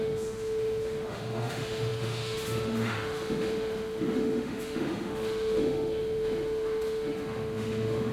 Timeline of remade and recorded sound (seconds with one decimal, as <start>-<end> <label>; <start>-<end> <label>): 0.0-8.1 remade